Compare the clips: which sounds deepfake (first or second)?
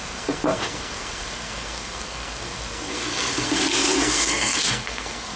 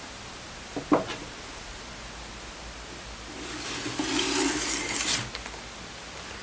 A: first